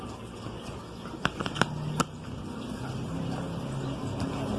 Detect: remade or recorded recorded